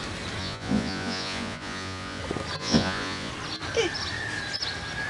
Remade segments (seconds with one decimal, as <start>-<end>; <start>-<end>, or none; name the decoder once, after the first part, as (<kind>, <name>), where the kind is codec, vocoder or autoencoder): 0.4-2.2 (vocoder, Vocos); 2.6-3.3